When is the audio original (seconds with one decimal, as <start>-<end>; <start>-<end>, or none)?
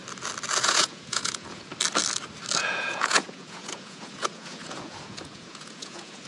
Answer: 0.0-0.6; 1.7-2.6